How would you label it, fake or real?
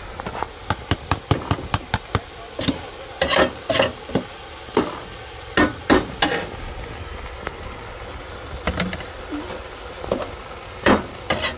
real